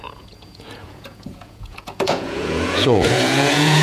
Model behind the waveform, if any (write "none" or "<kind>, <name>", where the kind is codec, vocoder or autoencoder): vocoder, Vocos